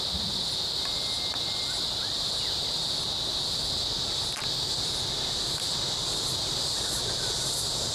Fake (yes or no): no